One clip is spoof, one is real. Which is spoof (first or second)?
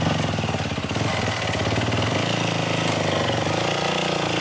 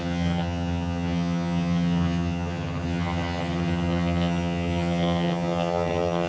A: second